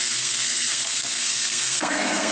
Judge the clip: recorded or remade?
remade